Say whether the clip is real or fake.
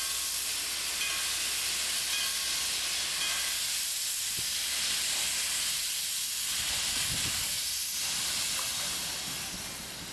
real